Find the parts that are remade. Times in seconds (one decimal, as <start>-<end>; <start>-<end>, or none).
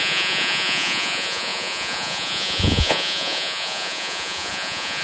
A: 0.0-5.0